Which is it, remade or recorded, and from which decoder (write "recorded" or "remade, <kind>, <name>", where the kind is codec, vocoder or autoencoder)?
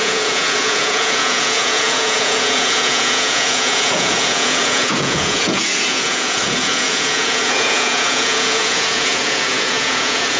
remade, vocoder, Vocos